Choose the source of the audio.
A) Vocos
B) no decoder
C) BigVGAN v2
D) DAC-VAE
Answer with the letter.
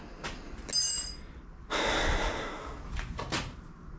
B